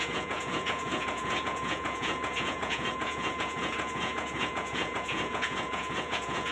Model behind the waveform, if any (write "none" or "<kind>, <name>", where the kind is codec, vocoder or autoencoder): vocoder, Vocos